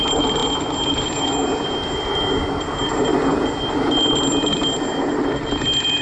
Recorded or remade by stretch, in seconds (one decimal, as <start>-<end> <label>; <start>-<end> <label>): 0.0-6.0 recorded